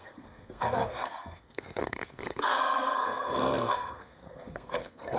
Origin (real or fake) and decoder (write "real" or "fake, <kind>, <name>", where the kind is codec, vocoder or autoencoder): fake, codec, SNAC